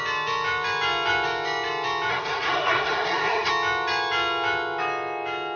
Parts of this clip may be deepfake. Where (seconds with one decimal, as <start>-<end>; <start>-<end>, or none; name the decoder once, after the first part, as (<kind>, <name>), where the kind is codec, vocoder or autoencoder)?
2.1-3.5 (codec, SNAC)